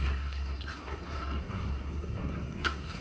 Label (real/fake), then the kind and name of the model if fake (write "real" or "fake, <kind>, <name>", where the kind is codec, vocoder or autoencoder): fake, codec, SNAC